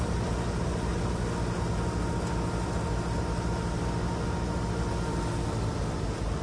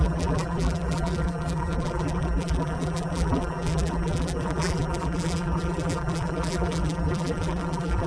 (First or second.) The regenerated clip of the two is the second